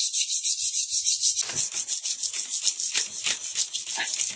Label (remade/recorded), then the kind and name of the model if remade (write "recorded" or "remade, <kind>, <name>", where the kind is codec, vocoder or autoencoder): recorded